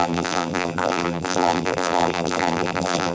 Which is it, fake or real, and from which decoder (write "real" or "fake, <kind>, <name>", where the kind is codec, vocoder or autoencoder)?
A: fake, vocoder, BigVGAN v2